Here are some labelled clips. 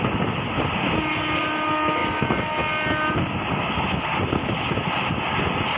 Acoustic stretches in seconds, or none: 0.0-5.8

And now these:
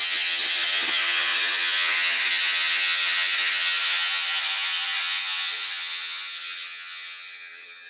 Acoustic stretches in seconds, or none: none

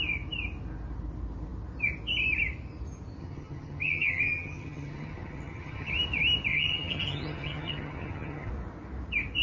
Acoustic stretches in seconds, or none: 0.0-3.2; 5.9-6.5; 8.5-9.4

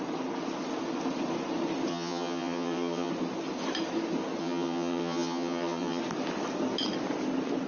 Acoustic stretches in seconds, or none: 0.0-1.9; 3.1-4.4; 6.0-7.7